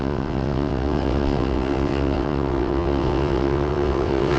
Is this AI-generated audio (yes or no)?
yes